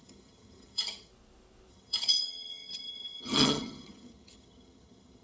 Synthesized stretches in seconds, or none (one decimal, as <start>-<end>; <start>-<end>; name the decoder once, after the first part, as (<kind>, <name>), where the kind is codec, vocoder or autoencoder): 0.0-1.1 (vocoder, HiFi-GAN); 1.7-5.2